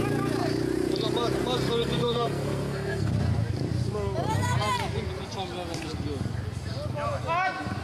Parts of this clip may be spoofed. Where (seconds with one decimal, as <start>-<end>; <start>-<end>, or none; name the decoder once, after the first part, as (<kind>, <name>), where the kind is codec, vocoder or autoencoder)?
1.8-3.1 (codec, SNAC)